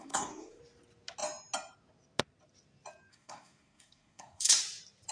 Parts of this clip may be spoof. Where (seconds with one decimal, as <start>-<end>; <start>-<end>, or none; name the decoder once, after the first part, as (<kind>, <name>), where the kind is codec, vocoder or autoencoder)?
0.0-0.6 (codec, SNAC); 3.1-4.6